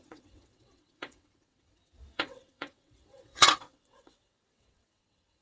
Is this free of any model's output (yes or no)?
no